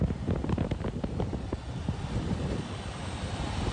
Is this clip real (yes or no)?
yes